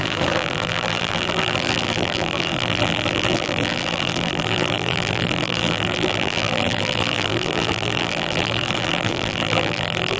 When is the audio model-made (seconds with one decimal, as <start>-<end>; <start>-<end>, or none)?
0.0-10.2